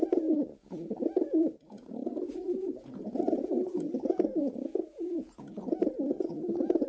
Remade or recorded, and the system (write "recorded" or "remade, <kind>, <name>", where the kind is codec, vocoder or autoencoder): remade, vocoder, Vocos